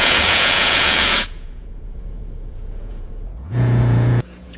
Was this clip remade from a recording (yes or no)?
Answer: yes